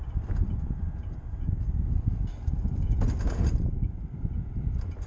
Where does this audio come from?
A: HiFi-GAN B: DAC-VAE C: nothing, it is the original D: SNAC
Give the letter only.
C